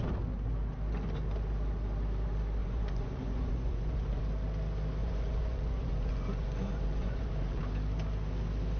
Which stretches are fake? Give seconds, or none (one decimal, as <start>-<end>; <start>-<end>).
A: 2.6-4.2; 5.0-7.6